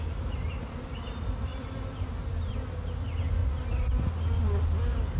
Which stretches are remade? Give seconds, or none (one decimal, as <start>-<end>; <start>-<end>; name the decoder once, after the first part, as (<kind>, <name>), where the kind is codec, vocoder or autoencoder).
none